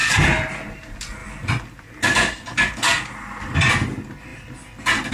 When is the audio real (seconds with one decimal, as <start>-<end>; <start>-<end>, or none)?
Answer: 0.5-1.2; 3.7-4.3